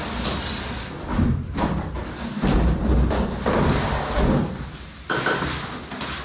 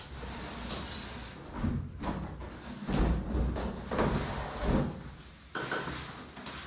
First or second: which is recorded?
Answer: second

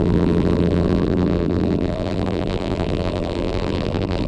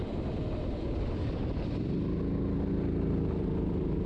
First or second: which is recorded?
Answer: second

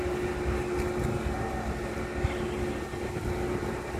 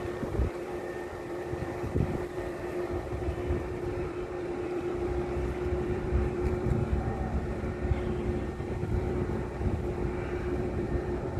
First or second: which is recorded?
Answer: first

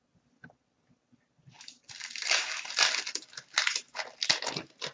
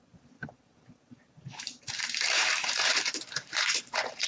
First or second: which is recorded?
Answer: first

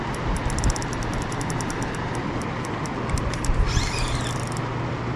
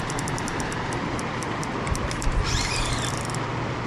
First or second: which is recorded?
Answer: first